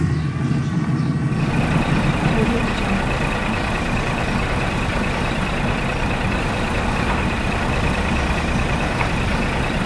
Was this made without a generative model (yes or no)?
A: no